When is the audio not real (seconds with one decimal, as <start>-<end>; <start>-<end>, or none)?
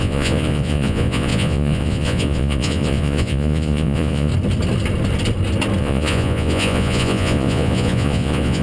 0.0-4.3; 5.8-8.6